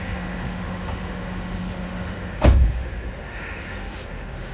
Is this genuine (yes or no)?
no